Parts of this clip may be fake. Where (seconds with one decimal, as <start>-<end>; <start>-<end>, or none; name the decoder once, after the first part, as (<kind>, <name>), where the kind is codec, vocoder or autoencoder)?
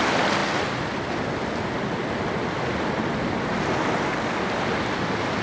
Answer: none